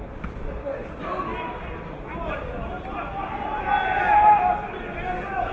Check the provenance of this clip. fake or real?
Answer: real